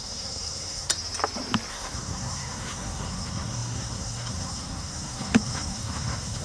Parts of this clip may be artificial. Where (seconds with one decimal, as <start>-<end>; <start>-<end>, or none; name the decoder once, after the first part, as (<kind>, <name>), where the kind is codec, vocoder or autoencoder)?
0.0-0.9 (codec, SNAC); 1.7-6.4